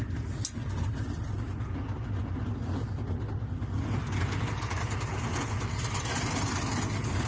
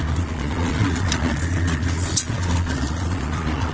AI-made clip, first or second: second